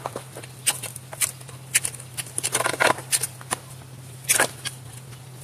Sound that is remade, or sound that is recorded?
recorded